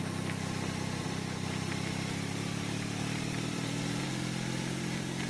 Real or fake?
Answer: fake